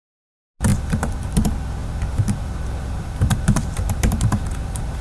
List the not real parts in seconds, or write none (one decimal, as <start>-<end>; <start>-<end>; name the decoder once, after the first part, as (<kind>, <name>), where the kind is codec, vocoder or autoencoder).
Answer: 0.7-1.3 (vocoder, BigVGAN v2); 1.8-5.0